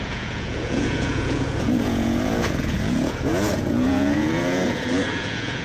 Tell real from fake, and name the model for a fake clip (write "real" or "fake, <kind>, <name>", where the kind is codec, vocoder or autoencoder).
fake, vocoder, Vocos